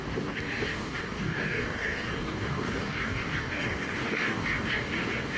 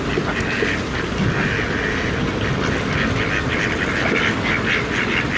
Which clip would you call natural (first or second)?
second